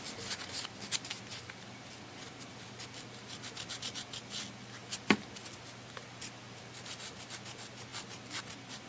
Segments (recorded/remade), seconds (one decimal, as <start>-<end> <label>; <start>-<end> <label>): 0.0-8.9 recorded